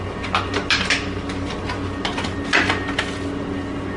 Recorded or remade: recorded